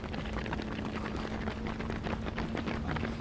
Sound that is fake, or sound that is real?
real